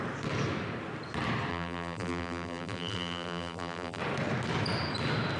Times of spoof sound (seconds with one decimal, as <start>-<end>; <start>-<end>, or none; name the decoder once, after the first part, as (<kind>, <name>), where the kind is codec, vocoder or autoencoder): 1.5-4.0 (vocoder, BigVGAN v2)